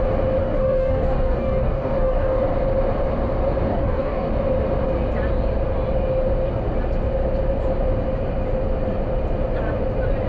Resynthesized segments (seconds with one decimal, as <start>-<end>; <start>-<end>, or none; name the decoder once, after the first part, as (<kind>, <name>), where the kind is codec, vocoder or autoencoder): 0.4-2.4 (codec, DAC); 3.7-4.3